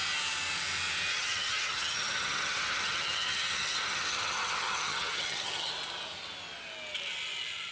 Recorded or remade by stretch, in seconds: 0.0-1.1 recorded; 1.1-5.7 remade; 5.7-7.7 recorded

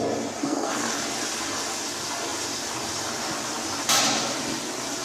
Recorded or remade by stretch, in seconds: 0.0-0.4 recorded; 0.4-1.0 remade; 1.0-5.0 recorded

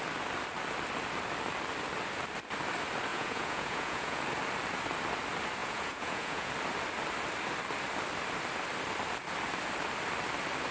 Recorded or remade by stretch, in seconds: 0.0-3.1 recorded; 3.1-4.2 remade; 4.2-5.6 recorded; 5.6-6.5 remade; 6.5-10.7 recorded

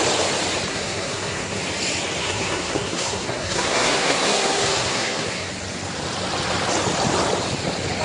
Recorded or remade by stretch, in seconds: 0.0-0.7 recorded; 0.7-1.6 remade; 1.6-2.2 recorded; 2.2-5.5 remade; 5.5-8.0 recorded

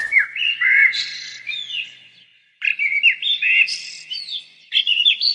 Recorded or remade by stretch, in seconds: 0.0-2.3 remade; 2.3-4.4 recorded; 4.4-5.3 remade

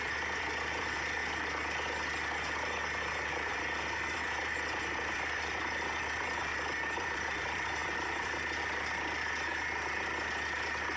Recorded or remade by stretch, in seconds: 0.0-1.2 remade; 1.2-3.5 recorded; 3.5-9.5 remade; 9.5-11.0 recorded

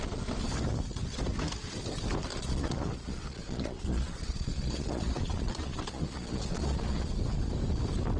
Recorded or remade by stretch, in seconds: 0.0-2.3 recorded; 2.3-7.1 remade; 7.1-8.2 recorded

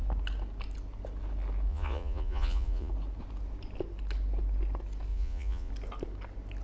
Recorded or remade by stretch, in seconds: 0.0-1.7 recorded; 1.7-2.9 remade; 2.9-5.1 recorded; 5.1-5.7 remade; 5.7-6.6 recorded